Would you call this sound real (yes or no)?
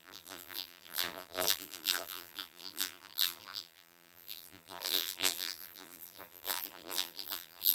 no